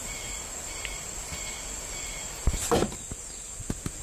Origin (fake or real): real